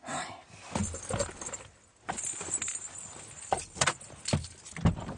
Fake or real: real